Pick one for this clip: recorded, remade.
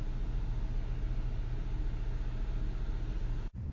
recorded